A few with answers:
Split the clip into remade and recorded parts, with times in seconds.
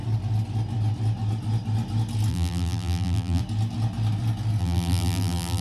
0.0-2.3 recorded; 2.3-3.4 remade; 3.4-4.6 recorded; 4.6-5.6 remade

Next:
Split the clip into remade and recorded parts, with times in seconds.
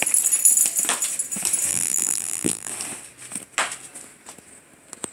0.0-1.7 recorded; 1.7-2.7 remade; 2.7-5.1 recorded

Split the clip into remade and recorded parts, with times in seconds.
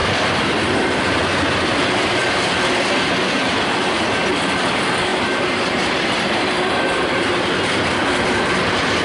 0.0-1.0 remade; 1.0-5.1 recorded; 5.1-7.6 remade; 7.6-9.0 recorded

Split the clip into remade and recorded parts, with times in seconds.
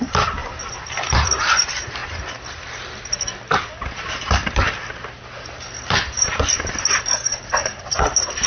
0.0-2.0 remade; 2.0-4.0 recorded; 4.0-4.4 remade; 4.4-6.1 recorded; 6.1-8.5 remade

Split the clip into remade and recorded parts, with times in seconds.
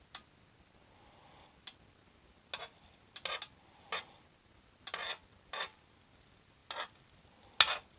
0.0-8.0 recorded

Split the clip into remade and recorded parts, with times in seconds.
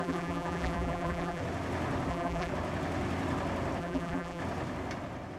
0.0-1.4 remade; 1.4-2.1 recorded; 2.1-2.5 remade; 2.5-3.8 recorded; 3.8-4.4 remade; 4.4-5.4 recorded